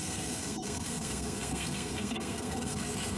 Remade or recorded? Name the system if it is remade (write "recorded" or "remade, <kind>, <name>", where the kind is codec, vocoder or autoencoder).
remade, codec, SNAC